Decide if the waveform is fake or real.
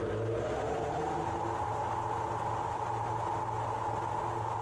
real